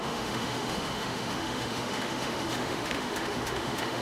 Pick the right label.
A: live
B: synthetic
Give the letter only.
B